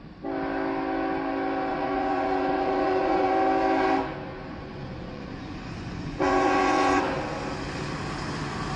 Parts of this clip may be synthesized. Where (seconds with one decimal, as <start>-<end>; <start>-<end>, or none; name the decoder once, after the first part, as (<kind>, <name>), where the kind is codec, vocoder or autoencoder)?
1.7-3.3 (vocoder, Vocos); 4.3-7.0